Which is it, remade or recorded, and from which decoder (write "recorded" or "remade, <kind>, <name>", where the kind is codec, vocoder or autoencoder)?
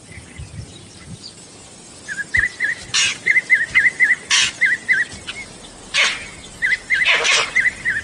recorded